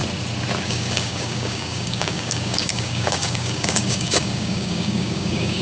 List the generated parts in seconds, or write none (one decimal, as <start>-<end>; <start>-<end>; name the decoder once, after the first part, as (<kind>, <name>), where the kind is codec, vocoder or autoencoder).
0.6-5.6 (codec, DAC)